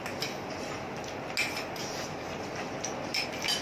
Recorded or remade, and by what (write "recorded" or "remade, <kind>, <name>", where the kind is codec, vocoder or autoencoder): recorded